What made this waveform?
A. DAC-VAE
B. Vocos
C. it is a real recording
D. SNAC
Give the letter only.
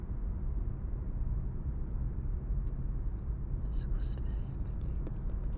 C